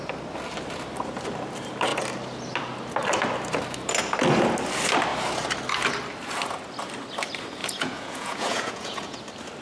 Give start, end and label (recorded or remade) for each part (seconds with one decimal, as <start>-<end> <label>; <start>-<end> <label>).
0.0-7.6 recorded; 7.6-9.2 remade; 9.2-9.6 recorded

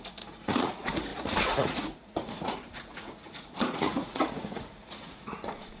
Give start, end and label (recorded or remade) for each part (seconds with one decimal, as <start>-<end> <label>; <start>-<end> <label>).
0.0-5.8 remade

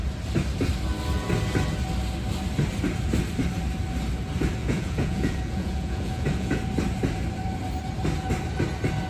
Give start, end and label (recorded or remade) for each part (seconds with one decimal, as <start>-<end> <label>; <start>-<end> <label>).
0.0-4.6 recorded; 4.6-6.6 remade; 6.6-9.1 recorded

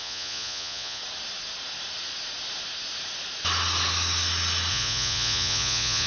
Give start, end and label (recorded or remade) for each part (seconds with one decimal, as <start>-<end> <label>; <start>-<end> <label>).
0.0-1.0 remade; 1.0-4.7 recorded; 4.7-6.1 remade

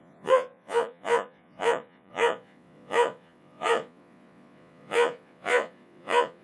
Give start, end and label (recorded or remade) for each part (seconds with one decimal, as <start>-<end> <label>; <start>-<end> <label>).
0.0-6.4 remade